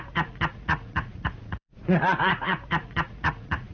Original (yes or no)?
no